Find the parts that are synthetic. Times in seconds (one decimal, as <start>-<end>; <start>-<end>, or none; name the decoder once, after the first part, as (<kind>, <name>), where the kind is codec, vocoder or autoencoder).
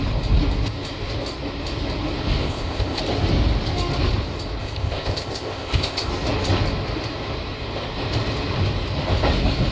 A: 2.4-3.0 (codec, ZipCodec); 4.6-6.1